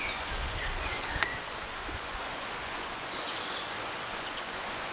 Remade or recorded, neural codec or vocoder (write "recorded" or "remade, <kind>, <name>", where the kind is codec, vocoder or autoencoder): remade, vocoder, Vocos